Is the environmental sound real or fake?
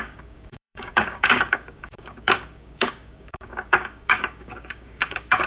fake